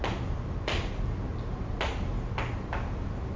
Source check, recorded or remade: recorded